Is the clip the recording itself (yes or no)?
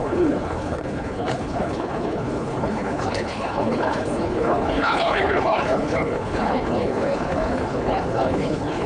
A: no